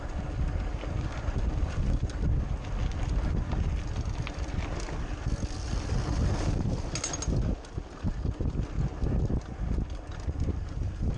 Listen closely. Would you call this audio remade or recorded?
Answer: recorded